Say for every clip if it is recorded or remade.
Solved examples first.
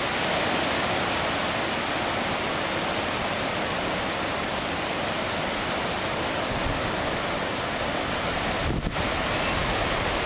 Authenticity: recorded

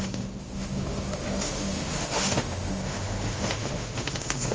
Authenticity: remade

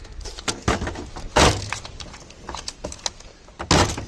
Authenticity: recorded